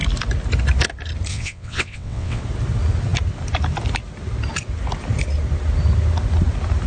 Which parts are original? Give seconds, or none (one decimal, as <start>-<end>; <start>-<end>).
0.0-1.3; 2.4-6.9